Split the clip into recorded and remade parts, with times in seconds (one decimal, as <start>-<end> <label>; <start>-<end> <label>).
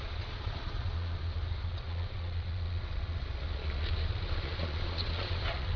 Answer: 0.0-5.8 remade